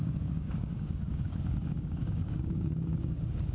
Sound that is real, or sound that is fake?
fake